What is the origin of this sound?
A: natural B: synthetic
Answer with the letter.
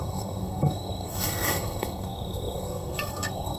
B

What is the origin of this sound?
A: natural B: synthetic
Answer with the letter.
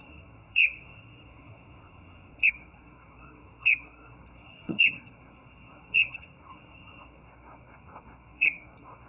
B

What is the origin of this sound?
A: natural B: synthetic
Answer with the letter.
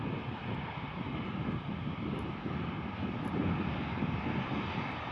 A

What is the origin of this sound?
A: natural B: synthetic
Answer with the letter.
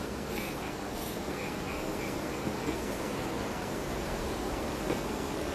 B